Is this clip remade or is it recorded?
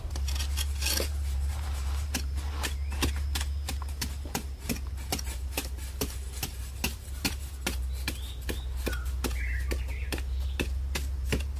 recorded